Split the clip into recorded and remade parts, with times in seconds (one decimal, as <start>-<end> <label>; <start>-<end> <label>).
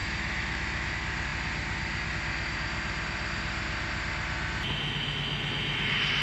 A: 0.0-0.9 remade; 0.9-6.2 recorded